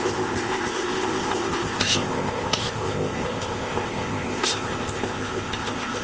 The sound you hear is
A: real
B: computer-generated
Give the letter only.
B